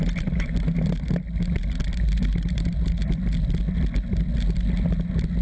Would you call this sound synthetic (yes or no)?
no